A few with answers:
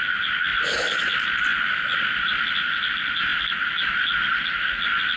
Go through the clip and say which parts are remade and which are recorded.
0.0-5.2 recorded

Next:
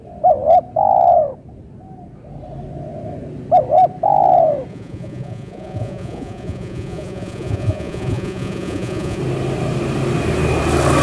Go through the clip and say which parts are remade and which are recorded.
0.0-4.7 recorded; 4.7-9.2 remade; 9.2-11.0 recorded